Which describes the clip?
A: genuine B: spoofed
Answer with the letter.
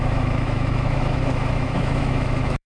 B